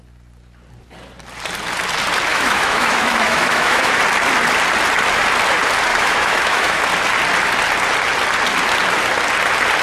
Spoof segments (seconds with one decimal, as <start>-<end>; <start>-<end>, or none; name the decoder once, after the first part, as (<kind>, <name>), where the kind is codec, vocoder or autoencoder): 2.3-4.0 (autoencoder, DAC-VAE); 5.9-6.8